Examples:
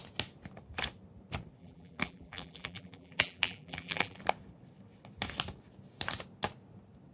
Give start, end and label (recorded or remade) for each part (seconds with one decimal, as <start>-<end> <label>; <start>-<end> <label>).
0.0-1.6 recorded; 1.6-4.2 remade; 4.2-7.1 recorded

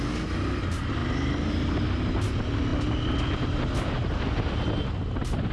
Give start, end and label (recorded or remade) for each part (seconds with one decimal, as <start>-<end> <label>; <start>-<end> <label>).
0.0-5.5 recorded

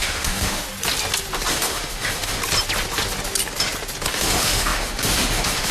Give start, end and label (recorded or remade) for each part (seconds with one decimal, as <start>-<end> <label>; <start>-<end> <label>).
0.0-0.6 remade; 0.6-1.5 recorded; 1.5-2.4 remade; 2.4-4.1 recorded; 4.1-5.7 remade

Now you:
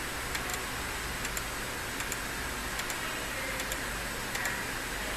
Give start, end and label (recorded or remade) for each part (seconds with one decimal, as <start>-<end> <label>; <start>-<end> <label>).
0.0-5.2 recorded

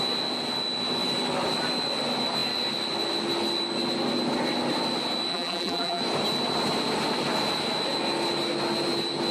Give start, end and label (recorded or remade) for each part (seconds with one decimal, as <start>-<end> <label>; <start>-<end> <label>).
0.0-5.3 recorded; 5.3-6.0 remade; 6.0-9.3 recorded